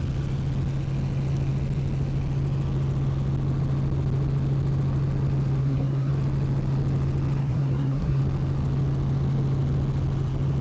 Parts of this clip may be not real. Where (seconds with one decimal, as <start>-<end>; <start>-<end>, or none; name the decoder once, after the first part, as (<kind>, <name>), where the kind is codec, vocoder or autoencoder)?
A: 5.6-6.1 (codec, SNAC); 7.4-8.2